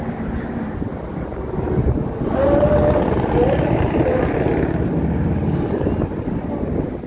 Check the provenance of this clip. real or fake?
real